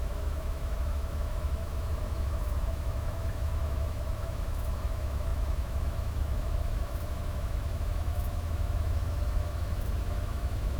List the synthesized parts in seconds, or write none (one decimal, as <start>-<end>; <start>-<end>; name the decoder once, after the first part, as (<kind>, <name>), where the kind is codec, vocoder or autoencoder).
0.0-10.8 (autoencoder, DAC-VAE)